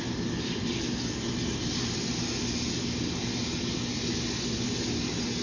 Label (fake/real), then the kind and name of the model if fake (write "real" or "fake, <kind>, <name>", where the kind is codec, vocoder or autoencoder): real